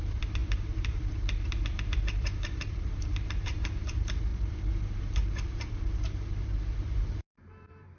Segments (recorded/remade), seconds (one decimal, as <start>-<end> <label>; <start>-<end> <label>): 0.0-4.3 remade; 4.3-5.0 recorded; 5.0-8.0 remade